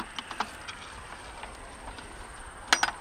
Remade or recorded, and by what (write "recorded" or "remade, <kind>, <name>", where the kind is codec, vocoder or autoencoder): recorded